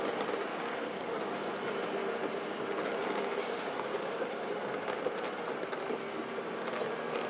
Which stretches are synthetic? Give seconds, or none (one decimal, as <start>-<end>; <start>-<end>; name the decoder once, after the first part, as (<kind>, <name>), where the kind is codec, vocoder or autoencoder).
0.5-1.5 (codec, DAC); 3.0-5.1